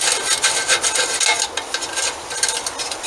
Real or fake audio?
real